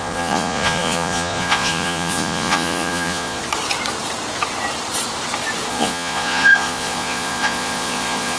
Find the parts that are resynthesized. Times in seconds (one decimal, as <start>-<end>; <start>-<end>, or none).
0.0-3.4; 5.7-8.4